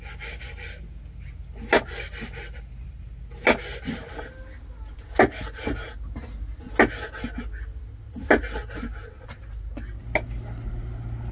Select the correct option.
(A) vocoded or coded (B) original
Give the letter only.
B